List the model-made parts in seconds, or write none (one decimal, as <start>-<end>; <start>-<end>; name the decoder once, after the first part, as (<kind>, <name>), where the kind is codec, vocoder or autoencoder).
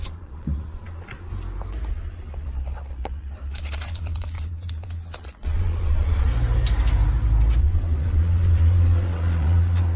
0.0-1.3 (vocoder, Vocos); 1.9-6.3; 7.6-10.0